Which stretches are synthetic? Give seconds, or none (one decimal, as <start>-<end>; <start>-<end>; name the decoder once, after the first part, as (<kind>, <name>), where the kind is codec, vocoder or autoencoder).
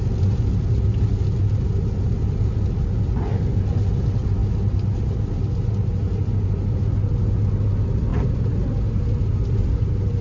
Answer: none